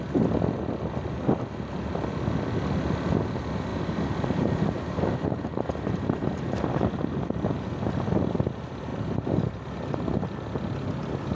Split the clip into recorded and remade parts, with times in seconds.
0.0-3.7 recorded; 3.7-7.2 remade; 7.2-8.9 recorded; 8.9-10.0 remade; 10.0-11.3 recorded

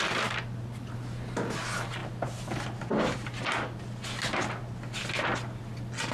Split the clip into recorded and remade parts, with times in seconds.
0.0-6.1 recorded

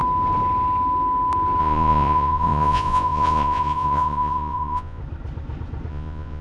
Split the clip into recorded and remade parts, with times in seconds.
0.0-1.6 recorded; 1.6-5.0 remade; 5.0-5.9 recorded; 5.9-6.4 remade

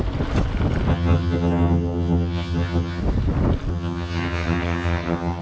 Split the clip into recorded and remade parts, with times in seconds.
0.0-0.9 recorded; 0.9-3.0 remade; 3.0-3.7 recorded; 3.7-5.4 remade

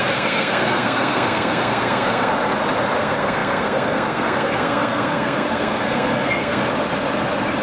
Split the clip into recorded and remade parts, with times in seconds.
0.0-2.3 remade; 2.3-3.0 recorded; 3.0-6.6 remade; 6.6-7.6 recorded

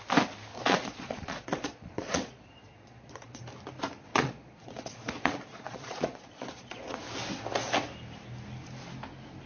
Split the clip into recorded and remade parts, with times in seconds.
0.0-0.5 recorded; 0.5-3.4 remade; 3.4-4.1 recorded; 4.1-7.0 remade; 7.0-9.5 recorded

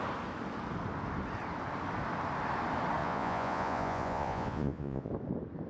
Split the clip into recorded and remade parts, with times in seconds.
0.0-3.0 recorded; 3.0-5.1 remade; 5.1-5.7 recorded

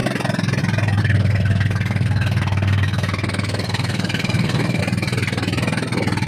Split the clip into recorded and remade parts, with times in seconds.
0.0-1.0 recorded; 1.0-4.8 remade; 4.8-6.3 recorded